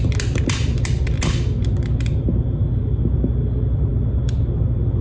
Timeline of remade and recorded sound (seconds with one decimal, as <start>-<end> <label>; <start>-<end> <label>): 0.0-5.0 recorded